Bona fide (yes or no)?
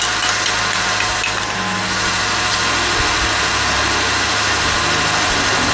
yes